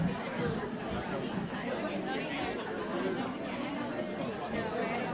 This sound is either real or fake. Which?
real